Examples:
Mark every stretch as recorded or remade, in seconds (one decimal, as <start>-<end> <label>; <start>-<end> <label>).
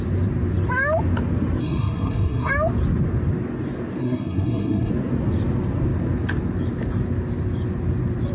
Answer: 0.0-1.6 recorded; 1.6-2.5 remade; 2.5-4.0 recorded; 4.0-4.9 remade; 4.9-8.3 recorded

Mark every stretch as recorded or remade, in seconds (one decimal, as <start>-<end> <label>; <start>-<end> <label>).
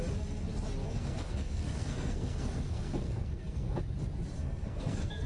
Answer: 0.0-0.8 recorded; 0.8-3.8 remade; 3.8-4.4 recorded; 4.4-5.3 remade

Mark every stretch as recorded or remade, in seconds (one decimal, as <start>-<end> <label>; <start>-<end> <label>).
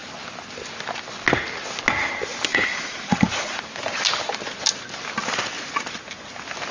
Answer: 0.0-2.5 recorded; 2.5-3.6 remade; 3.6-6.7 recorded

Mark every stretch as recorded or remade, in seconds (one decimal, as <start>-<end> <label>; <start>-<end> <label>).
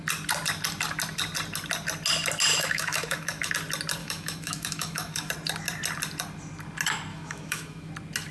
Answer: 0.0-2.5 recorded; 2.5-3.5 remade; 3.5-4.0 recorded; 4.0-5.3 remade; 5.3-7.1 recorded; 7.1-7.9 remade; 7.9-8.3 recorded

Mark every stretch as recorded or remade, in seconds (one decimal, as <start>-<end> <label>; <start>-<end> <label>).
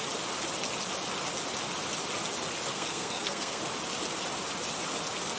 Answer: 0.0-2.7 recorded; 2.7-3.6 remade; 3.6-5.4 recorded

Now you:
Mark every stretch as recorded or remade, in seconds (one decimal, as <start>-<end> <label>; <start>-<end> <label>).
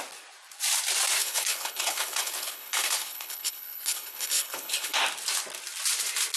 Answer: 0.0-1.2 recorded; 1.2-5.0 remade; 5.0-6.4 recorded